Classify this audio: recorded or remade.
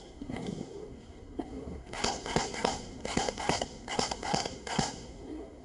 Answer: remade